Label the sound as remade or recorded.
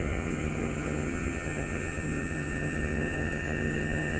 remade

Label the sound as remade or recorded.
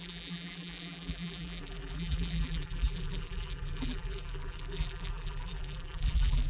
remade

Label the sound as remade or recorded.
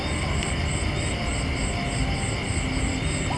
recorded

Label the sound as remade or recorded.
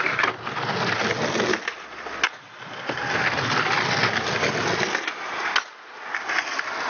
recorded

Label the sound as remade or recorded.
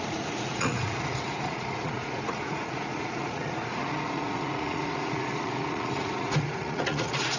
remade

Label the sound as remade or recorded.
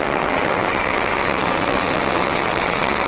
remade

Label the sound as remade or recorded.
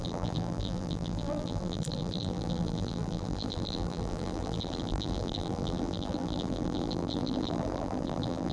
remade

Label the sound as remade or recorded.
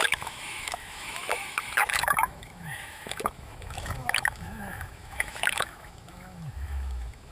remade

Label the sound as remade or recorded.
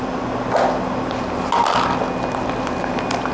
recorded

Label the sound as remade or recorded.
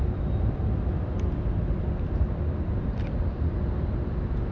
recorded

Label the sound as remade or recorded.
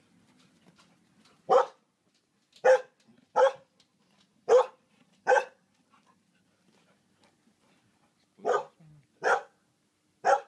recorded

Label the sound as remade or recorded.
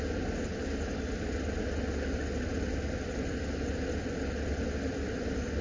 recorded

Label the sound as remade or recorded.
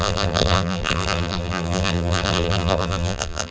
remade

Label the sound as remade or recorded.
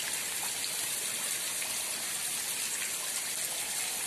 recorded